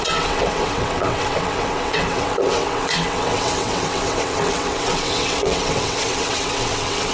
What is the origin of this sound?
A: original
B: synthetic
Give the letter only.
B